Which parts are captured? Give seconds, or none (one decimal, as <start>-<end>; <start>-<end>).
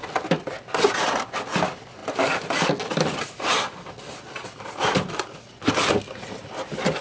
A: 0.0-7.0